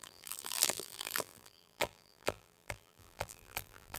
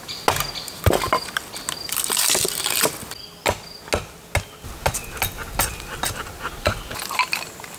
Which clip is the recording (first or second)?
second